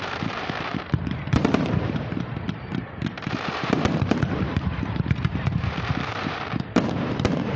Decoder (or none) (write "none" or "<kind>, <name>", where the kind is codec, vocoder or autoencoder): vocoder, BigVGAN v2